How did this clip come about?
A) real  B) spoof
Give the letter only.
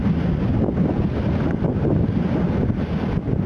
A